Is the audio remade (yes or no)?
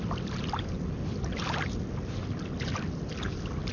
no